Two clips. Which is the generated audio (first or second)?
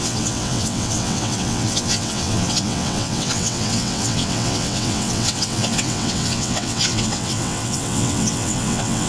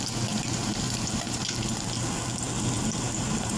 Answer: first